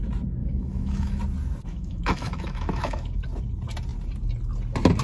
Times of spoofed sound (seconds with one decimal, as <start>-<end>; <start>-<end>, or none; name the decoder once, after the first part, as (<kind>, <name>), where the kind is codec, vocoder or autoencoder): 0.4-1.2 (autoencoder, DAC-VAE); 1.7-3.1